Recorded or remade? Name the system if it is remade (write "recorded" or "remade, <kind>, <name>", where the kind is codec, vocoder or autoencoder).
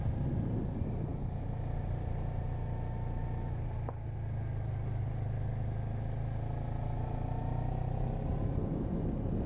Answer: recorded